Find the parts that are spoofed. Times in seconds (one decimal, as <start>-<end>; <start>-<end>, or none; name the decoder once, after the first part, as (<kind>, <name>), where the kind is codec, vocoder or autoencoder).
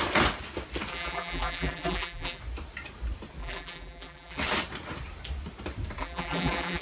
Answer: 0.9-2.4 (vocoder, BigVGAN v2); 3.4-4.4; 6.0-6.8